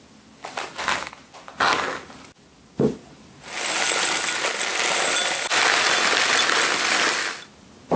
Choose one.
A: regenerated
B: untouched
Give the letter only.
B